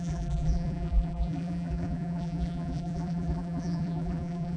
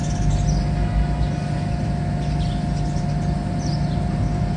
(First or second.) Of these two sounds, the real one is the second